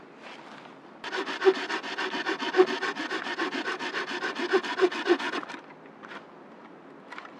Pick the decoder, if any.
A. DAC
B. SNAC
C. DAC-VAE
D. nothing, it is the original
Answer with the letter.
D